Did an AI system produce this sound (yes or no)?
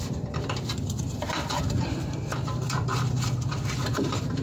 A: yes